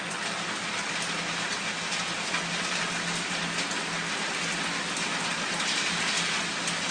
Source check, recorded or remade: recorded